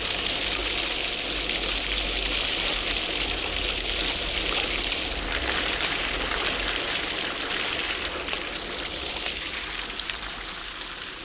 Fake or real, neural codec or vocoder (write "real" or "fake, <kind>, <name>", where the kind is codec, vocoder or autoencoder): real